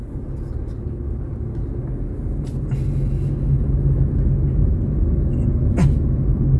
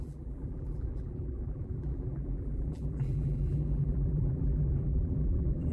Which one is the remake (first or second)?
second